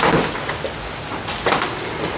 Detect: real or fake real